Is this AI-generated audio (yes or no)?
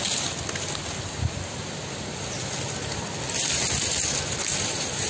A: no